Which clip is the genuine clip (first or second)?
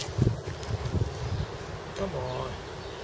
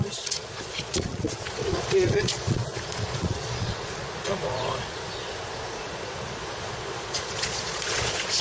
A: first